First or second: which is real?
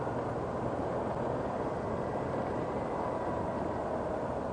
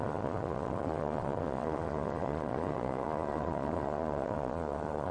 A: first